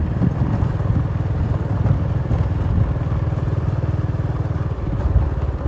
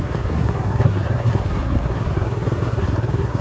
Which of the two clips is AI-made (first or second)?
second